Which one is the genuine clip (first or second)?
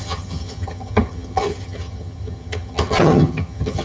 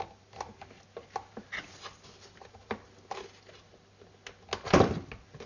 second